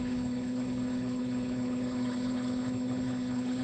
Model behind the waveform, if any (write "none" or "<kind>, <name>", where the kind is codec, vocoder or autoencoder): codec, HILCodec